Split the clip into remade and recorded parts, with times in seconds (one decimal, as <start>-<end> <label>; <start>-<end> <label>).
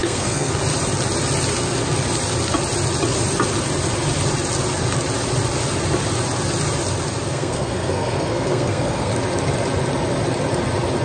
0.0-0.5 remade; 0.5-7.3 recorded; 7.3-9.1 remade; 9.1-11.0 recorded